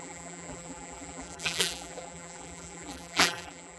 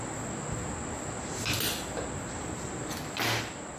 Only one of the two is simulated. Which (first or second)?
first